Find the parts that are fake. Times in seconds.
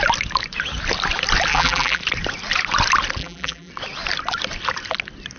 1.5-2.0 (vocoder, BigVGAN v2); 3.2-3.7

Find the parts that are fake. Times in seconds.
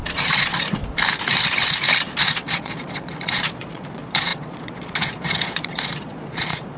0.0-0.8 (vocoder, Vocos); 2.2-6.8